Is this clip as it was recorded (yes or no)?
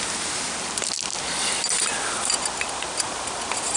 yes